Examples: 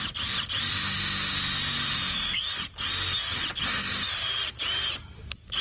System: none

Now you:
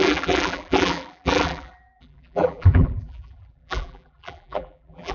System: vocoder, BigVGAN v2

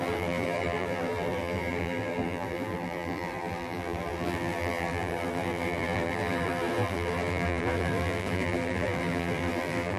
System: vocoder, BigVGAN v2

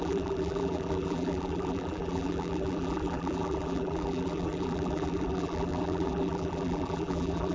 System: vocoder, BigVGAN v2